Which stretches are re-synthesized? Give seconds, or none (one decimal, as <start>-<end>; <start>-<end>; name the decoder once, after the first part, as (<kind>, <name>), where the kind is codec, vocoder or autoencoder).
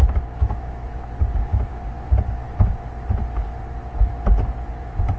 0.0-1.1 (autoencoder, DAC-VAE); 1.5-2.1